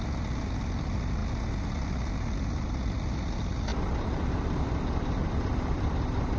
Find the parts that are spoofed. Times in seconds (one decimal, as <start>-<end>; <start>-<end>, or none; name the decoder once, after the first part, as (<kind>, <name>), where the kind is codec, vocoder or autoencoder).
3.7-5.3 (vocoder, BigVGAN v2)